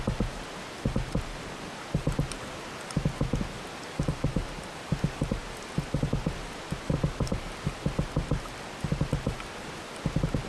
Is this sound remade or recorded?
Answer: recorded